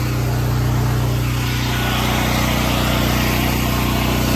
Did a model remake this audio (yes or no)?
no